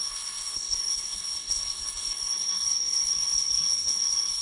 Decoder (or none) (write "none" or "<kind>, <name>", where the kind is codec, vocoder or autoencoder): codec, SNAC